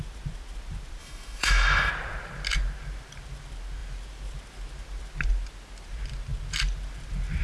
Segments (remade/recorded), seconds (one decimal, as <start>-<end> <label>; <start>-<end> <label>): 0.0-1.0 recorded; 1.0-1.9 remade; 1.9-7.4 recorded